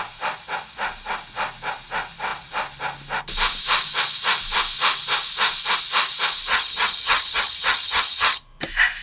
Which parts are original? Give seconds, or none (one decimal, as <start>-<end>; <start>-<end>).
0.0-6.5; 8.4-9.0